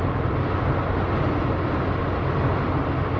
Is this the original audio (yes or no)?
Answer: yes